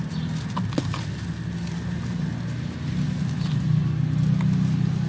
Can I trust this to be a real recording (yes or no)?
yes